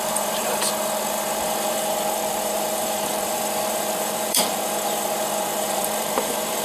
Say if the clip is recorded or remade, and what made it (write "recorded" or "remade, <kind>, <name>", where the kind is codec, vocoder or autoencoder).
remade, vocoder, BigVGAN v2